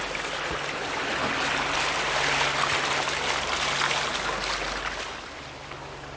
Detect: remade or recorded recorded